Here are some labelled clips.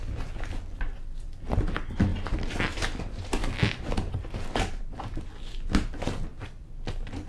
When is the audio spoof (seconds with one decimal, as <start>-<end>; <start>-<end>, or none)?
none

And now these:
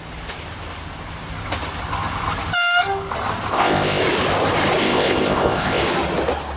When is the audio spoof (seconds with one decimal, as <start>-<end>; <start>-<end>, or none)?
3.5-4.0; 4.8-5.8

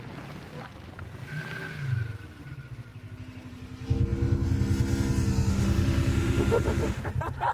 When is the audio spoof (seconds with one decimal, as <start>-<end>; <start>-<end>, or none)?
5.5-7.1

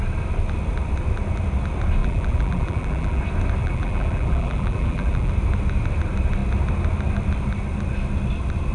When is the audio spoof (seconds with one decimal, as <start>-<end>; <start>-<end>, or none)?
2.0-3.2; 3.6-5.3

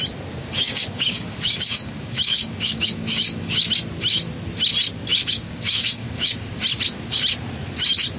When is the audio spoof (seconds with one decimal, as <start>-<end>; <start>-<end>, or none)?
0.4-3.7; 5.1-6.5